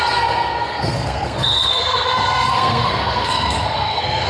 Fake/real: fake